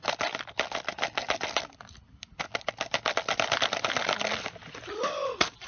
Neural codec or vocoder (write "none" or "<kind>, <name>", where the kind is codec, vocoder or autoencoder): none